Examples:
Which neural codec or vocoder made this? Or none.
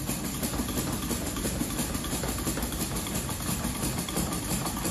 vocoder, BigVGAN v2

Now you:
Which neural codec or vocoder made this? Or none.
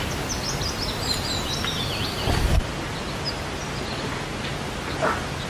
none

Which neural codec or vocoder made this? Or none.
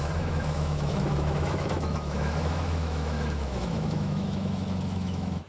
autoencoder, DAC-VAE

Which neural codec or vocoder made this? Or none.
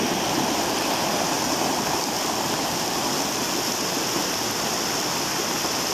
none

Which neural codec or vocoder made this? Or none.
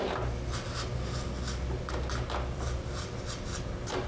none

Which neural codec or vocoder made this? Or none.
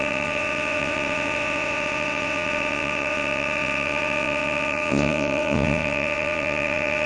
vocoder, WaveNeXt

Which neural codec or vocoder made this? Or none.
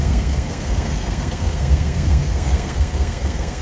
codec, SNAC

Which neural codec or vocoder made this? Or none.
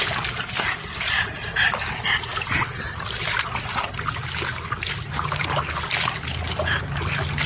none